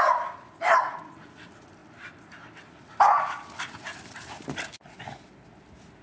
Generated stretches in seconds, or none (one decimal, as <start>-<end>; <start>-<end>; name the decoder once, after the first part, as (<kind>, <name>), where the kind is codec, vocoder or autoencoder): none